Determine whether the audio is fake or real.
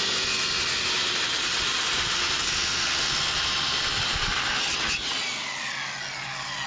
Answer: real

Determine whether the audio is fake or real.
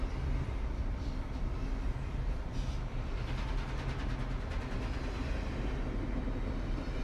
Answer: real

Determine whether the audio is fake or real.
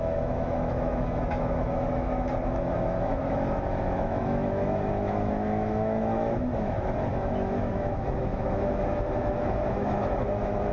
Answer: fake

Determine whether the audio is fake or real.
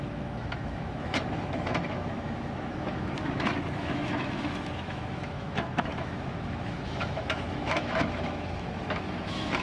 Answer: fake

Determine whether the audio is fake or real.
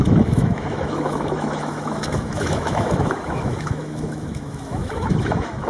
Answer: fake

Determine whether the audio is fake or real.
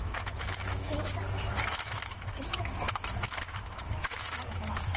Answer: fake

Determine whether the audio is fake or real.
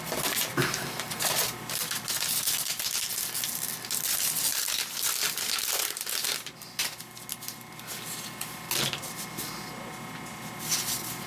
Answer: real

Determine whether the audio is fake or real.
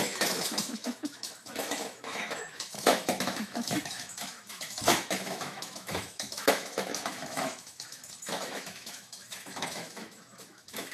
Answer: fake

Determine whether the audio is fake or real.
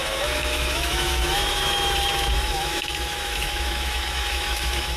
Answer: fake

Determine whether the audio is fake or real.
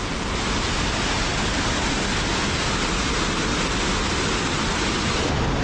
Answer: real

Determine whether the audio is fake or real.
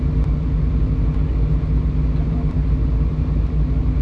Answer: real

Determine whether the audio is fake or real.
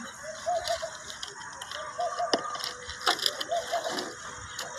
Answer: real